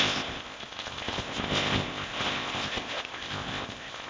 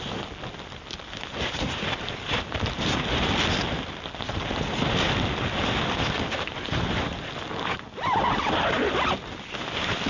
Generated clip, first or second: first